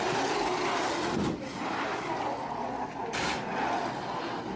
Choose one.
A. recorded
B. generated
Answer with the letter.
A